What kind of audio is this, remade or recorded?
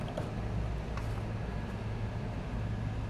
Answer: recorded